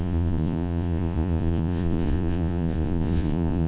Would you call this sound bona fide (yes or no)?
no